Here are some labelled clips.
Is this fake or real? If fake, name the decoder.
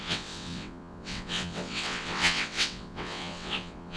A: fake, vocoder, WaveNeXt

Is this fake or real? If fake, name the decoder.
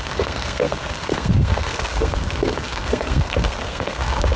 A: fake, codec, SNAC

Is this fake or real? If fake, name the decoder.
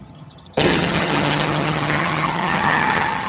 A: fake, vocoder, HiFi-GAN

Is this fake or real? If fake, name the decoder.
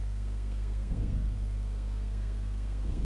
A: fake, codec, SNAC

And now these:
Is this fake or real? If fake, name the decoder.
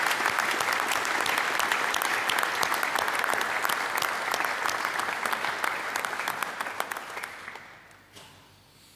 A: real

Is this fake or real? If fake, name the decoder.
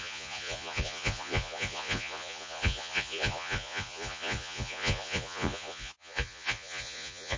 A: fake, vocoder, Vocos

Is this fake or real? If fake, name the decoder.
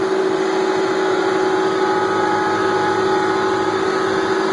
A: real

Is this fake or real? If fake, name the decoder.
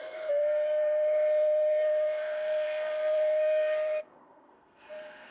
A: fake, codec, SNAC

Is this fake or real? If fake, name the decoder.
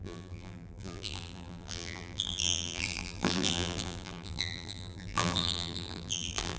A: fake, vocoder, BigVGAN v2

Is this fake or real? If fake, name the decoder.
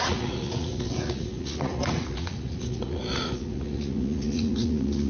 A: fake, vocoder, Vocos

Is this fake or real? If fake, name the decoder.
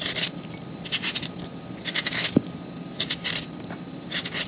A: real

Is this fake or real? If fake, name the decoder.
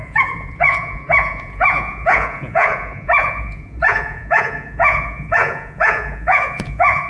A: fake, vocoder, Vocos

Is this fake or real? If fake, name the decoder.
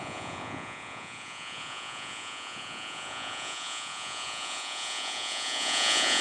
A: fake, vocoder, Vocos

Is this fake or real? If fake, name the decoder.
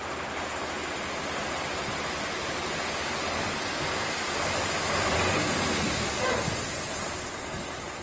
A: real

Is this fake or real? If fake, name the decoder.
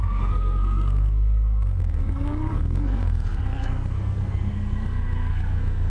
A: fake, codec, SNAC